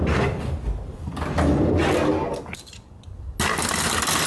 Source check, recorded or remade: recorded